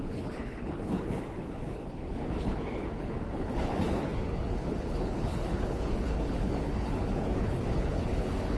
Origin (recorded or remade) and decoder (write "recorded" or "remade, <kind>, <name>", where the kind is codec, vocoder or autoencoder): remade, codec, HILCodec